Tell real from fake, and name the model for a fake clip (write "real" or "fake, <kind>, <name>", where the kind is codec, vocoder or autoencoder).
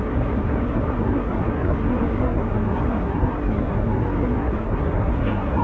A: fake, codec, SNAC